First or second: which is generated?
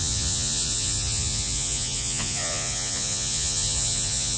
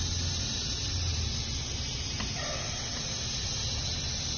first